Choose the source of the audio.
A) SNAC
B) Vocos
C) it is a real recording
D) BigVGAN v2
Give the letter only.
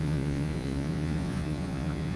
B